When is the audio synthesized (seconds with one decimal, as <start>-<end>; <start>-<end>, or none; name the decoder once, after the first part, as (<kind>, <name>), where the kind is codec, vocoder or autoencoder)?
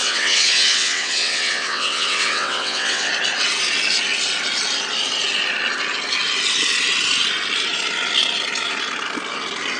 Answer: 0.0-3.1 (vocoder, WaveNeXt)